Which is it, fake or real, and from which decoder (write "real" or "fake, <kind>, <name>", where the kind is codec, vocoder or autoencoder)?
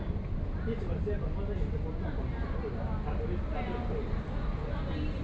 real